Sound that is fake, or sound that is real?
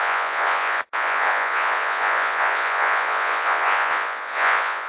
fake